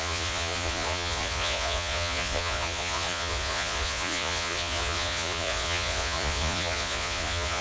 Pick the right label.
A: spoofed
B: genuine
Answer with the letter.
A